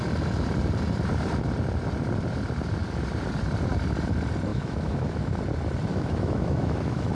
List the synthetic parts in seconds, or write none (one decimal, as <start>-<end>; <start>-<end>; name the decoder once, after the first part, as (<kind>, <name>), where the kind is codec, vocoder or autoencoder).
4.5-5.4 (autoencoder, DAC-VAE); 5.9-7.1